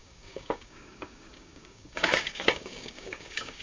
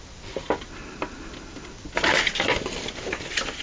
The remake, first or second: first